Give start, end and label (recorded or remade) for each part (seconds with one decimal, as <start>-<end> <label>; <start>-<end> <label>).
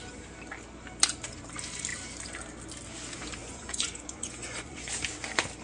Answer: 0.0-3.4 recorded; 3.4-4.9 remade; 4.9-5.6 recorded